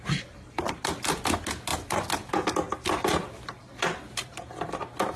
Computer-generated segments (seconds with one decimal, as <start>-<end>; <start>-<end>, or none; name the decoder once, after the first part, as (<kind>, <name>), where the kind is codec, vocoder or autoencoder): 1.7-2.3 (vocoder, BigVGAN v2); 3.7-4.8